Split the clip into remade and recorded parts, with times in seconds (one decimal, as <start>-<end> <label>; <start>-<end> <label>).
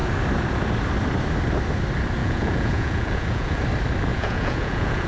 0.0-2.2 recorded; 2.2-3.6 remade; 3.6-4.1 recorded; 4.1-5.1 remade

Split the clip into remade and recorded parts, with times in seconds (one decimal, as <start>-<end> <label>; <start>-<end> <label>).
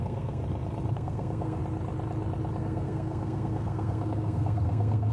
0.0-0.4 remade; 0.4-0.9 recorded; 0.9-1.6 remade; 1.6-2.6 recorded; 2.6-5.1 remade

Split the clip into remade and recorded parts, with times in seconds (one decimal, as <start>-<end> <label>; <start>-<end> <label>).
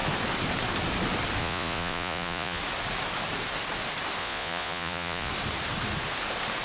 0.0-1.4 recorded; 1.4-2.6 remade; 2.6-4.2 recorded; 4.2-5.3 remade; 5.3-6.6 recorded